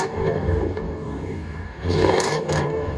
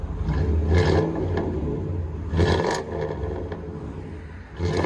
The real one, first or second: second